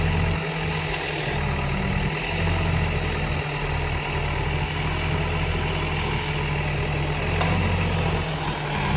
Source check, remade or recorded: recorded